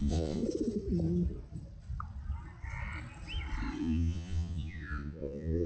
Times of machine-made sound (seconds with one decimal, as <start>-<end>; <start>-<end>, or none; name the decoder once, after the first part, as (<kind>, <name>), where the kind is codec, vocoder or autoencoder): 0.0-0.4 (vocoder, Vocos); 3.8-5.7